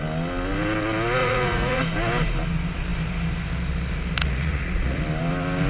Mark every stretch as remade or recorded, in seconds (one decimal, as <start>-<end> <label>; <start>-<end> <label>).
0.0-1.2 recorded; 1.2-1.8 remade; 1.8-4.2 recorded; 4.2-5.0 remade; 5.0-5.7 recorded